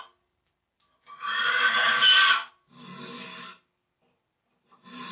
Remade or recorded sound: recorded